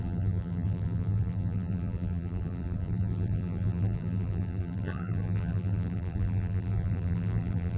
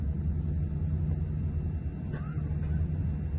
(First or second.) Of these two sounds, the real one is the second